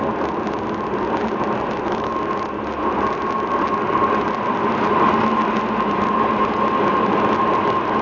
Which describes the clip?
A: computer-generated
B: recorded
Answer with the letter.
B